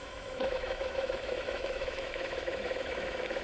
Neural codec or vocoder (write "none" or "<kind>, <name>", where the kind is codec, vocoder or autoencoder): autoencoder, DAC-VAE